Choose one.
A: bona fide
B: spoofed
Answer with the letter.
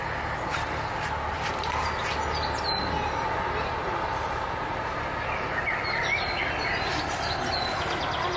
A